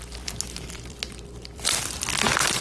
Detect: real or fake fake